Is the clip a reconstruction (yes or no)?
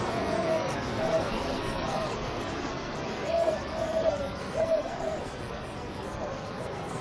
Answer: yes